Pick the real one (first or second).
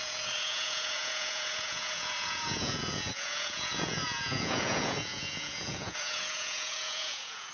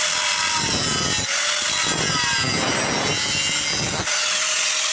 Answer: second